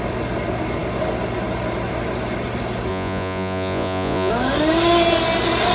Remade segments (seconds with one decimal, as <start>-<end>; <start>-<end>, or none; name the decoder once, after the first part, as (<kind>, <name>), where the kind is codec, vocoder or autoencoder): 2.9-4.3 (vocoder, Vocos)